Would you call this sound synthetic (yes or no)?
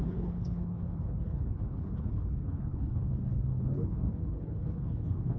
yes